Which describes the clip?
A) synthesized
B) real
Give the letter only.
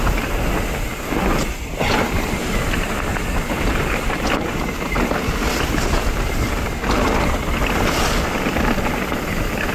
B